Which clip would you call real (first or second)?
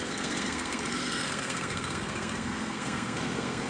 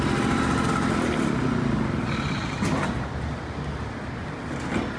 second